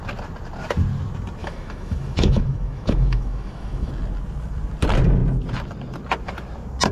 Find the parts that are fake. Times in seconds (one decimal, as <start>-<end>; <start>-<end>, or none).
1.4-3.9